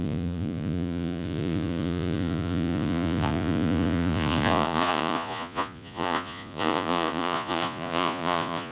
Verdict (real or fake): fake